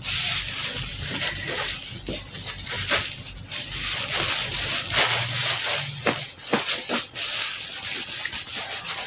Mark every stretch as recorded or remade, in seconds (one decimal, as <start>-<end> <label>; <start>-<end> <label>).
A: 0.0-0.9 recorded; 0.9-1.9 remade; 1.9-9.1 recorded